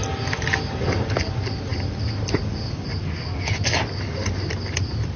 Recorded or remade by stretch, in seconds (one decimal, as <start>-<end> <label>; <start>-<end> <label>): 0.0-5.2 recorded